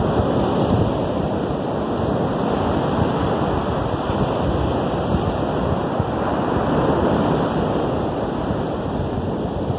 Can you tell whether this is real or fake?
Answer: real